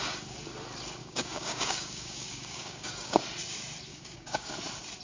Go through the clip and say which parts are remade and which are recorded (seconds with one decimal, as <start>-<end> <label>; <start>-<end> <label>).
0.0-1.0 recorded; 1.0-3.2 remade; 3.2-3.9 recorded; 3.9-4.5 remade; 4.5-5.0 recorded